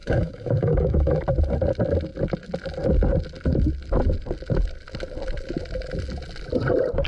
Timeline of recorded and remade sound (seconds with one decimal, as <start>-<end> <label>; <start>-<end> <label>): 0.0-1.2 remade; 1.2-7.1 recorded